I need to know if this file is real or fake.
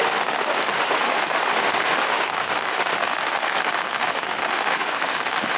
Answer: fake